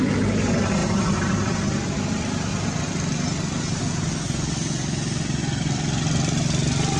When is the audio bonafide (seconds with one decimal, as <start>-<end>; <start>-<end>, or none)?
0.0-0.8; 1.8-7.0